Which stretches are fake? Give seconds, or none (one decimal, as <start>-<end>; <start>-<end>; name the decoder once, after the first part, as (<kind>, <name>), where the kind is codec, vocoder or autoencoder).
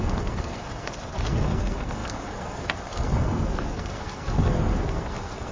0.0-5.5 (codec, SNAC)